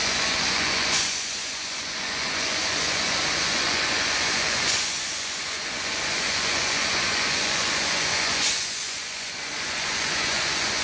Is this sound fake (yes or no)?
yes